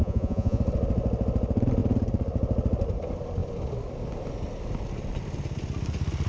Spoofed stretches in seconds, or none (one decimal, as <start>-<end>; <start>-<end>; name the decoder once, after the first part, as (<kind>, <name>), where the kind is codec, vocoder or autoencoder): 0.0-0.6 (vocoder, Vocos)